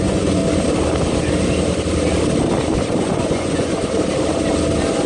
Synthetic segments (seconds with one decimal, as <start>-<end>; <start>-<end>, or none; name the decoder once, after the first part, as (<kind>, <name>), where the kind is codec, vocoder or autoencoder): 0.0-0.4 (vocoder, Vocos); 3.0-3.8